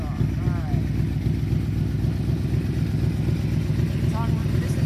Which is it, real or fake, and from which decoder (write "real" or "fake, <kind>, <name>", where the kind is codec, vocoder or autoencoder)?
real